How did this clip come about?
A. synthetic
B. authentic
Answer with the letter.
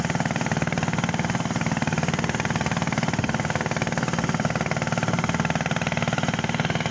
B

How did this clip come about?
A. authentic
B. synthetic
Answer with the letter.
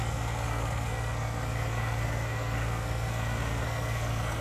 B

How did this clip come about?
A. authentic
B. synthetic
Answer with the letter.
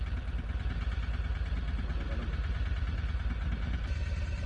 A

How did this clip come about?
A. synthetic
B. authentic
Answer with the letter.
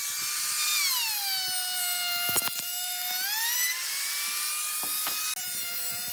B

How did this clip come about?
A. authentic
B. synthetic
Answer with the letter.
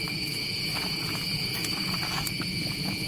B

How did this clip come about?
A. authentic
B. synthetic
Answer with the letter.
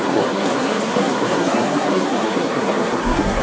B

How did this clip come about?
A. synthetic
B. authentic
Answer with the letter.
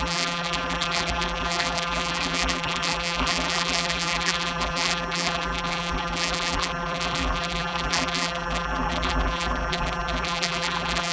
A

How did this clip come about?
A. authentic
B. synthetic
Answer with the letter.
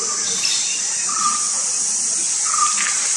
A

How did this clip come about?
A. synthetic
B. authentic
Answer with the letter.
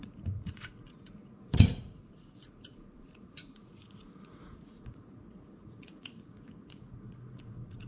A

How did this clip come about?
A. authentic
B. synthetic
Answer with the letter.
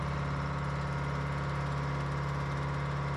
A